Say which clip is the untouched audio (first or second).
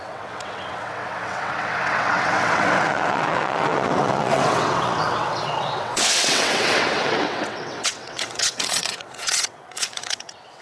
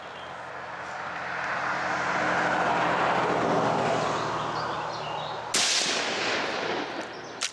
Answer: second